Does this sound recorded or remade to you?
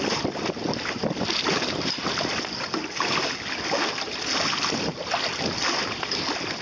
recorded